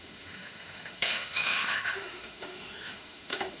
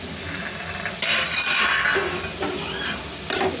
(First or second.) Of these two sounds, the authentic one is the second